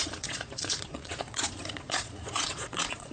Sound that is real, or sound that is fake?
fake